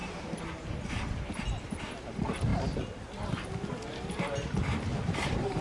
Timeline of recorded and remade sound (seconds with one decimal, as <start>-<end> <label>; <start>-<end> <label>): 0.0-1.4 remade; 1.4-4.9 recorded; 4.9-5.6 remade